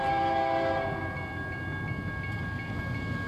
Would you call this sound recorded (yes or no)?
yes